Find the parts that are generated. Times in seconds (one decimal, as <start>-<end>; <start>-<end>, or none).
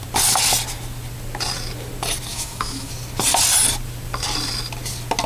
2.3-2.9